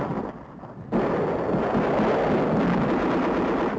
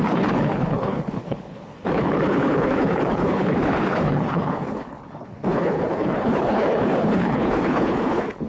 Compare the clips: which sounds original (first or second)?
first